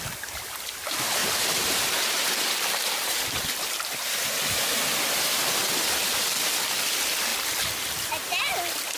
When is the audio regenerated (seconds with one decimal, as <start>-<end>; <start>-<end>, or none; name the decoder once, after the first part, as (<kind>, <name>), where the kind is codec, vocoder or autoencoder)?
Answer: 1.2-3.9 (vocoder, BigVGAN v2); 5.6-6.1